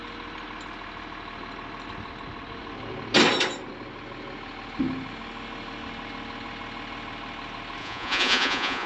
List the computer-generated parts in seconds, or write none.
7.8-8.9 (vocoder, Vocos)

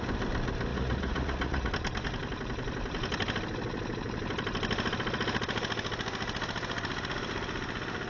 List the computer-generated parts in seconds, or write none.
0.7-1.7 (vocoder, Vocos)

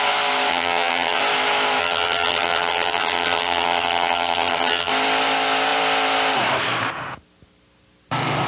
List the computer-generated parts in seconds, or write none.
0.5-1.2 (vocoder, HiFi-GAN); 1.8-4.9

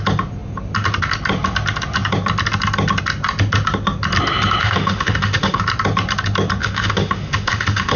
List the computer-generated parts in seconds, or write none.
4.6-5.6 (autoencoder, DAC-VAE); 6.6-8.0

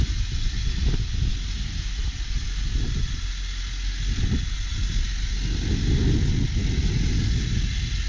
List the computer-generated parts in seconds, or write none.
none

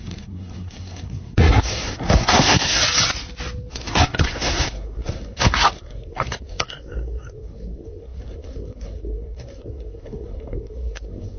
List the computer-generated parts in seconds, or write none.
0.0-2.8 (codec, SNAC); 3.7-11.4

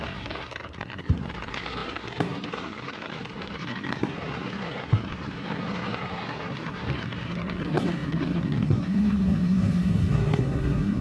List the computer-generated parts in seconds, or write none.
0.0-11.0 (codec, SNAC)